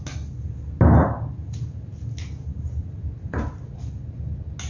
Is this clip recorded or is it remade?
recorded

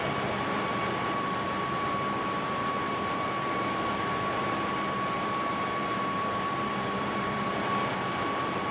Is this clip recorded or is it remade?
remade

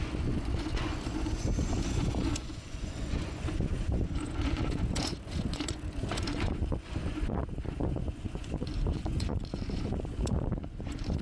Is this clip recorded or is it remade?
remade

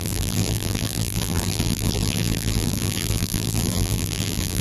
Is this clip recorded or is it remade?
remade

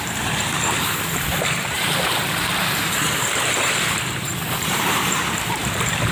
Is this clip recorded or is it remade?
remade